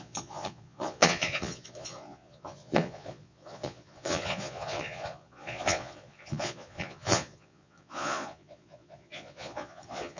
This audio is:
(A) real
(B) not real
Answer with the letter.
B